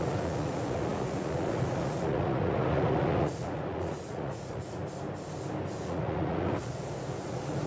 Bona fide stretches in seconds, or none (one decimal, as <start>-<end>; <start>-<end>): 4.8-5.8